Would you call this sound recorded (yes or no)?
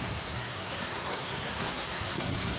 no